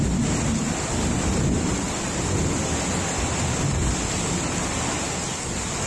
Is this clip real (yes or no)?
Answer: yes